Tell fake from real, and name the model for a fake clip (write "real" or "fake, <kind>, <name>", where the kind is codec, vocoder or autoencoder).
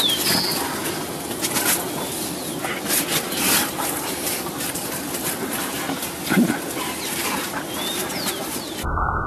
real